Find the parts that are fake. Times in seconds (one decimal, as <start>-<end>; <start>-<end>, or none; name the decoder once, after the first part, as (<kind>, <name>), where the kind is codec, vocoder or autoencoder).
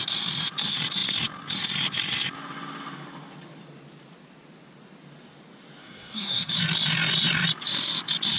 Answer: 5.8-6.5 (codec, SNAC)